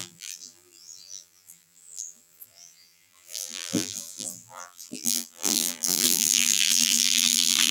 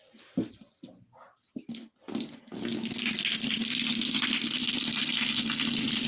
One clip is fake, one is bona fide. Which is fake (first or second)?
first